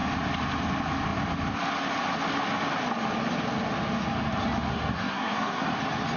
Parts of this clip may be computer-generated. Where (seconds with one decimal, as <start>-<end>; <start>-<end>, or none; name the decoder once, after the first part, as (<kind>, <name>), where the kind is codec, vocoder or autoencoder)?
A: 4.7-5.7 (codec, SNAC)